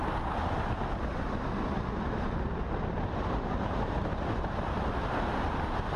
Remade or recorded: recorded